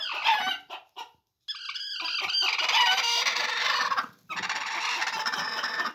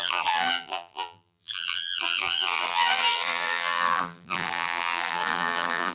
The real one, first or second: first